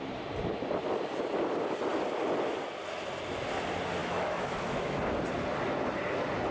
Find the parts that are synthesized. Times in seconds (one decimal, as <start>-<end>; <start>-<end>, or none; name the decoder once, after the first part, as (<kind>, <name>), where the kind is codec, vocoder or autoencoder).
4.0-5.0 (autoencoder, DAC-VAE)